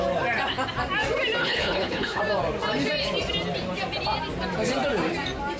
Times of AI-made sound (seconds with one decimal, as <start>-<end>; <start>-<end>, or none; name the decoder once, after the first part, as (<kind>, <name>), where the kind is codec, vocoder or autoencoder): 1.4-2.2 (codec, HILCodec)